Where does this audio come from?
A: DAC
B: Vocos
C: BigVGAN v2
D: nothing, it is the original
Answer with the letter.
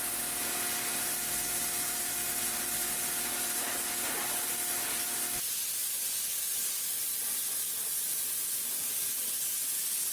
D